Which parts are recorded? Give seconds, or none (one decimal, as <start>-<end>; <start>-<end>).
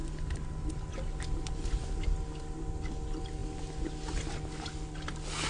0.0-5.5